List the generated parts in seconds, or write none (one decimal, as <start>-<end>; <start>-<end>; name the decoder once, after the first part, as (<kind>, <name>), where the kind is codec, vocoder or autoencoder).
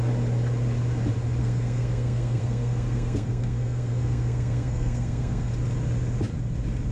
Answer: 1.4-5.5 (codec, SNAC)